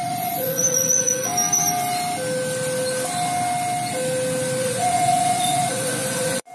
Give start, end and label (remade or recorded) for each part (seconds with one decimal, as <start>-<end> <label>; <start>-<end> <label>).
0.0-1.3 remade; 1.3-4.6 recorded; 4.6-6.5 remade